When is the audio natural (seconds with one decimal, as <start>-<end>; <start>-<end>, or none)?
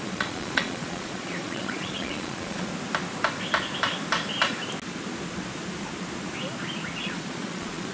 2.7-7.0